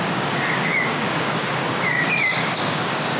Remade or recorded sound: remade